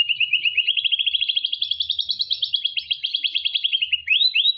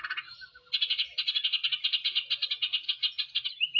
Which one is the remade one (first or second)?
first